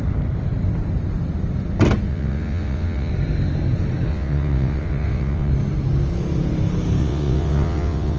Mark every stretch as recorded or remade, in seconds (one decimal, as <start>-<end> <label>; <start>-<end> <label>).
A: 0.0-2.1 recorded; 2.1-3.1 remade; 3.1-4.1 recorded; 4.1-5.5 remade; 5.5-7.0 recorded; 7.0-8.2 remade